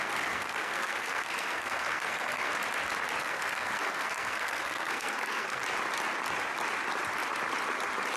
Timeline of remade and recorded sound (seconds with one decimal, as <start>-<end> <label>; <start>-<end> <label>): 0.0-2.5 remade; 2.5-3.2 recorded; 3.2-5.6 remade; 5.6-8.2 recorded